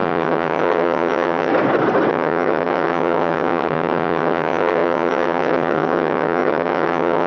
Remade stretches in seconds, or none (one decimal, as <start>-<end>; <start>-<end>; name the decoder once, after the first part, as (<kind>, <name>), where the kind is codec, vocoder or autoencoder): 0.0-1.5 (vocoder, HiFi-GAN); 2.1-7.3